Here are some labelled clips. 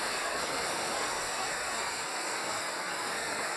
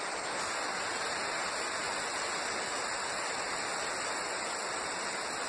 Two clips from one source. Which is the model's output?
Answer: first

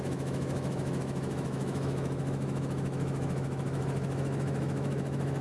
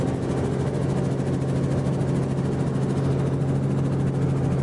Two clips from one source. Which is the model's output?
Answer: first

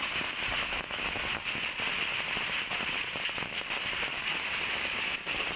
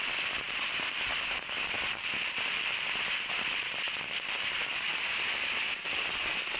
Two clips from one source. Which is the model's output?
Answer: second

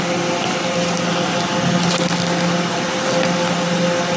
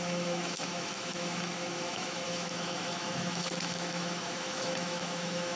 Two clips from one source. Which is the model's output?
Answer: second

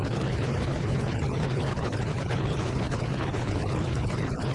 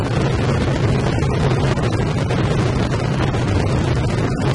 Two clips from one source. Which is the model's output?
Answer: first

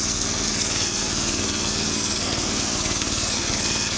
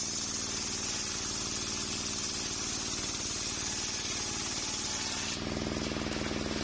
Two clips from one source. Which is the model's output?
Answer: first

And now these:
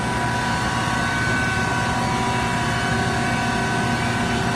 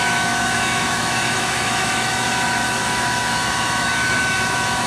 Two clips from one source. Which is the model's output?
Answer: second